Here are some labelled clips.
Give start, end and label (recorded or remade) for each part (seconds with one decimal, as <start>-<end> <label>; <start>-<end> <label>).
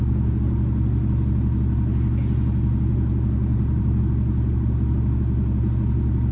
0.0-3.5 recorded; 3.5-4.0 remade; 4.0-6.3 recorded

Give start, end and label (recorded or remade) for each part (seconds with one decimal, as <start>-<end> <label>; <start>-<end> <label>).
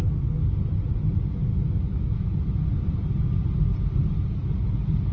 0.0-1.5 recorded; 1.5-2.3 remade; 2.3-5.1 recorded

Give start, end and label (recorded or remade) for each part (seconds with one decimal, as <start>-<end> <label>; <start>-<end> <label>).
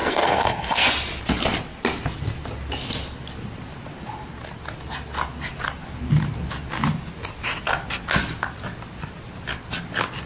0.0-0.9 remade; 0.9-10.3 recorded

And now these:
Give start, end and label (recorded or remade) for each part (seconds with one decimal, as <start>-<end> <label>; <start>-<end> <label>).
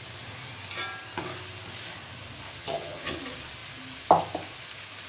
0.0-2.6 recorded; 2.6-3.2 remade; 3.2-5.1 recorded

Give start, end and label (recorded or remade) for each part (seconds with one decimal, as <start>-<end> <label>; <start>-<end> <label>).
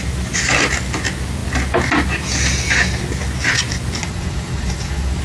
0.0-4.0 recorded; 4.0-5.2 remade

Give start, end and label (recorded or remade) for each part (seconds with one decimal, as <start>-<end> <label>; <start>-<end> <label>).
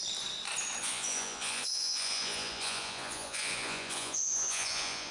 0.0-0.8 recorded; 0.8-5.1 remade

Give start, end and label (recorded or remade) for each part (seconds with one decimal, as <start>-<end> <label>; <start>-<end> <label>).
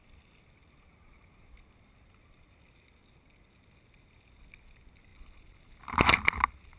0.0-6.8 recorded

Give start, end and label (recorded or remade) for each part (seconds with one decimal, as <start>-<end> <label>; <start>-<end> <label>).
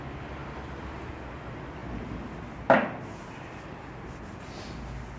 0.0-5.2 recorded